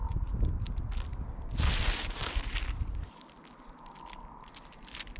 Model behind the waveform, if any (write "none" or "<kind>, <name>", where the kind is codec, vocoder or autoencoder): none